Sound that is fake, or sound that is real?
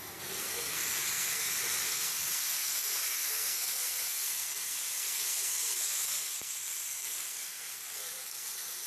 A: fake